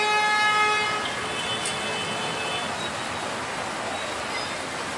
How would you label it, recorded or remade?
recorded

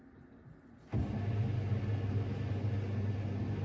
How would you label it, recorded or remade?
recorded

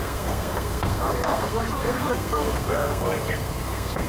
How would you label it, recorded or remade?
remade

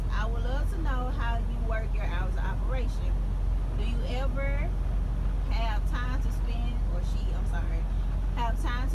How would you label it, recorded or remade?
recorded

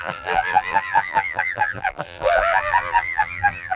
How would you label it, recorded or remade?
remade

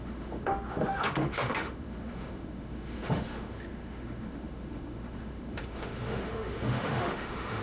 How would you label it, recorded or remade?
remade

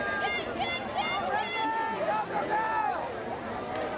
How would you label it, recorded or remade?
recorded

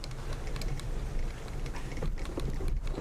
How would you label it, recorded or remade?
remade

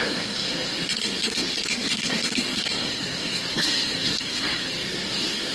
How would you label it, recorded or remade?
remade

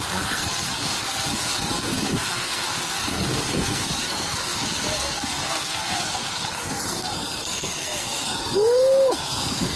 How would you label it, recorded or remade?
remade